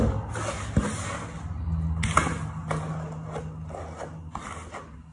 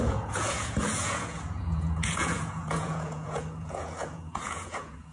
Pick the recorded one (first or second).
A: first